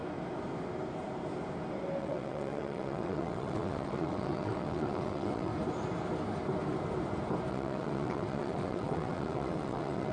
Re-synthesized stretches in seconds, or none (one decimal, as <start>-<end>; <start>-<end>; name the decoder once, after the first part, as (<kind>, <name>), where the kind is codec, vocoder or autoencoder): 2.0-5.5 (vocoder, WaveNeXt); 7.5-10.1